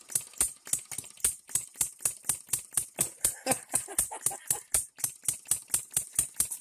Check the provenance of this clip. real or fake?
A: real